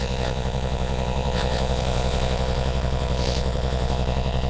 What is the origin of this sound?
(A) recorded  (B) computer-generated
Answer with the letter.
B